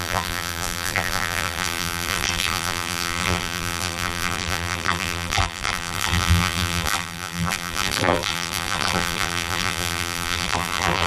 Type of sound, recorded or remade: remade